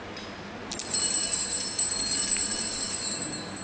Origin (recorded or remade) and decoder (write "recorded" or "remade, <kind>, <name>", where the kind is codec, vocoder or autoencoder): recorded